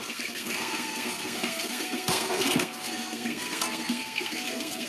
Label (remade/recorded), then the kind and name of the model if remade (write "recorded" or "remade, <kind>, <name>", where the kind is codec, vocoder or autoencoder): remade, codec, SNAC